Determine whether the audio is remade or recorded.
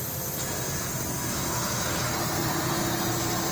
recorded